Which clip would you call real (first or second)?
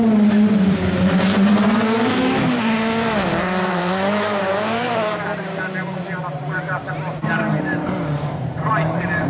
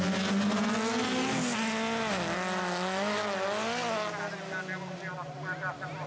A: second